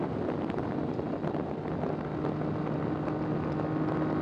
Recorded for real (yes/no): yes